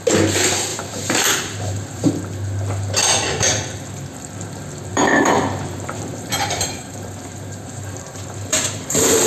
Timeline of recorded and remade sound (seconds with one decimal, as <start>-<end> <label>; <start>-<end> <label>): 0.0-0.7 recorded; 0.7-2.1 remade; 2.1-4.9 recorded; 4.9-9.3 remade